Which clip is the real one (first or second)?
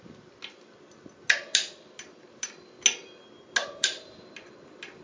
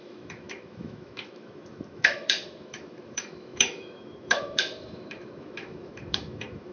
first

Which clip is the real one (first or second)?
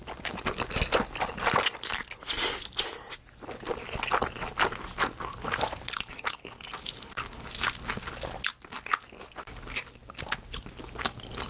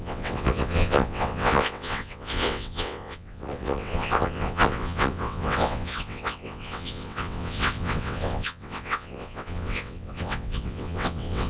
first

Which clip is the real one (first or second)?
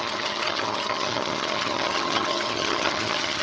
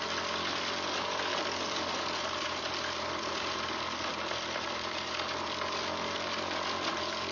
second